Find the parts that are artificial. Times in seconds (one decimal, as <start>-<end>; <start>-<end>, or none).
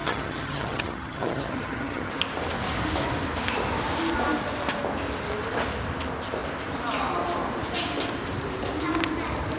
0.0-2.1